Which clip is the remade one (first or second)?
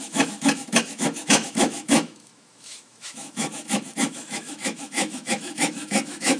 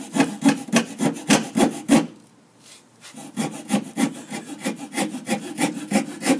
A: first